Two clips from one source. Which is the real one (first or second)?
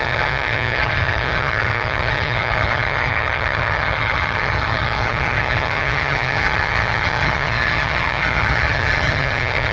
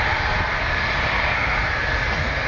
second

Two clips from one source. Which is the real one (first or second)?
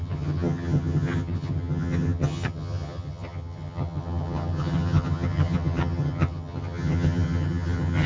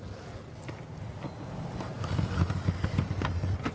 second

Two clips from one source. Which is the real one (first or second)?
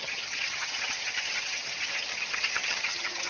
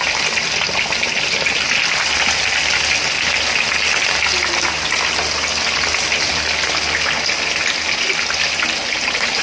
second